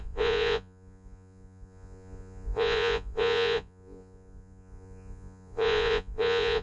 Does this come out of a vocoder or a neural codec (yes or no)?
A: yes